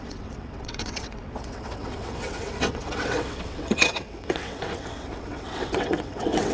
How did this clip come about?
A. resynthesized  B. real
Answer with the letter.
A